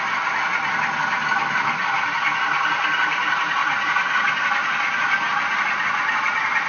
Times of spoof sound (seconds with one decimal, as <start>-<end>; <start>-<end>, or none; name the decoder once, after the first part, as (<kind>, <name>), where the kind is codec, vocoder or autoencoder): 3.6-4.3 (vocoder, Vocos)